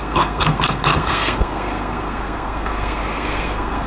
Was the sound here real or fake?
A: fake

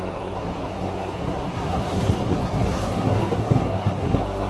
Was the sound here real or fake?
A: fake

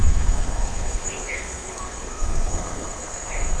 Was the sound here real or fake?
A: fake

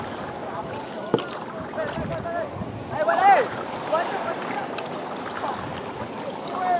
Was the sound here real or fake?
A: real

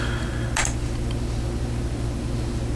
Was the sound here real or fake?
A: real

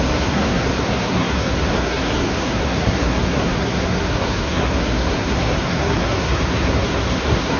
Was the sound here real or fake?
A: fake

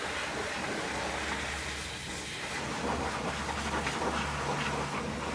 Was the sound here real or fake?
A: real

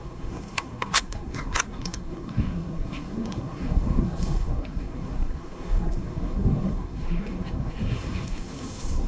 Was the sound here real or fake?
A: fake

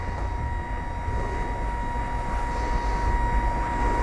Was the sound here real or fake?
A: real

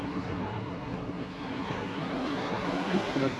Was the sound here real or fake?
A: fake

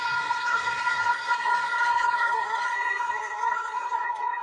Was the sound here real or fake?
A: fake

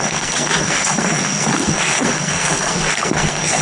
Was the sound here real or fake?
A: fake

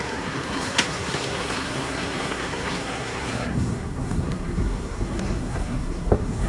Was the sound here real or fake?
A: fake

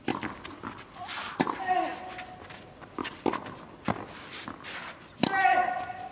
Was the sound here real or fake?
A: real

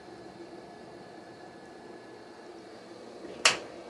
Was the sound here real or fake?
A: real